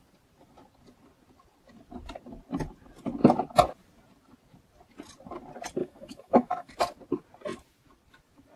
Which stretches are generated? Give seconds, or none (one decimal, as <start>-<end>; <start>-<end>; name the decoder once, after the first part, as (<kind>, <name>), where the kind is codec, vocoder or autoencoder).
5.8-6.7 (autoencoder, DAC-VAE)